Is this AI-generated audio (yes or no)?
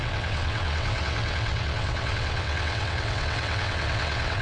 yes